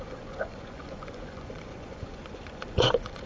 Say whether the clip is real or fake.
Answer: fake